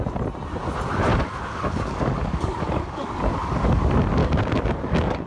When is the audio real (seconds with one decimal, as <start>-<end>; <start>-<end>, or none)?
0.0-1.1; 3.7-4.2